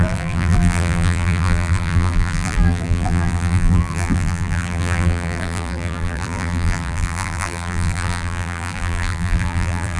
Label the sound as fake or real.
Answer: fake